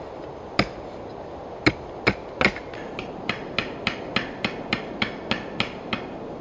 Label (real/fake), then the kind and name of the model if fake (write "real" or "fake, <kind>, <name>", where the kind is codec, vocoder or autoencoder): real